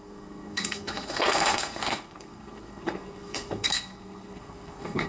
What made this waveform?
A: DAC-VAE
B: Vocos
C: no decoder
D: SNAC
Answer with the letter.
D